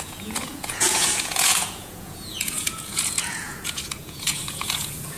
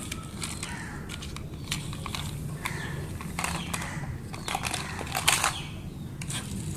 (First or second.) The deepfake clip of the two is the first